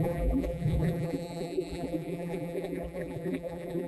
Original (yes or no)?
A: no